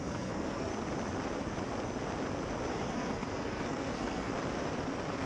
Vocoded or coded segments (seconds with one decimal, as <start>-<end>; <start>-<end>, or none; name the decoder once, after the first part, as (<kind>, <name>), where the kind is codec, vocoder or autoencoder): 0.0-0.7 (codec, SNAC); 2.7-4.3